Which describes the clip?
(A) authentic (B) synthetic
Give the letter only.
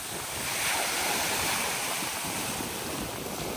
A